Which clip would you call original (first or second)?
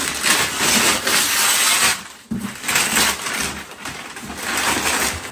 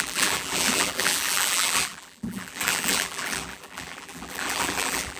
first